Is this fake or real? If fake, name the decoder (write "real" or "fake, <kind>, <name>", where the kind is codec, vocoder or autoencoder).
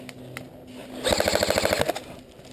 real